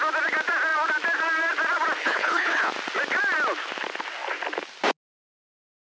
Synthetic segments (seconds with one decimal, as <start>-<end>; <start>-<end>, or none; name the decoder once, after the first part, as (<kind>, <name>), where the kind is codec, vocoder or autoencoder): 2.0-2.6 (codec, HILCodec)